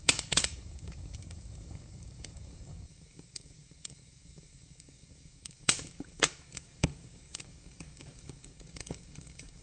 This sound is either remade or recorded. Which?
remade